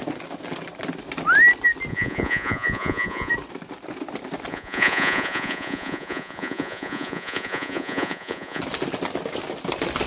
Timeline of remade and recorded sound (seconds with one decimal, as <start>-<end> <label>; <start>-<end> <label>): 0.0-1.9 recorded; 1.9-3.3 remade; 3.3-4.5 recorded; 4.5-8.6 remade; 8.6-10.1 recorded